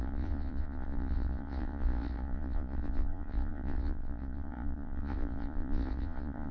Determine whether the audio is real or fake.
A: fake